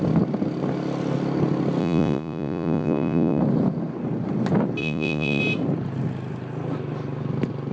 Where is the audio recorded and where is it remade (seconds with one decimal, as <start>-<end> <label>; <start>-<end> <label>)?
0.0-1.8 recorded; 1.8-3.4 remade; 3.4-4.8 recorded; 4.8-5.4 remade; 5.4-7.7 recorded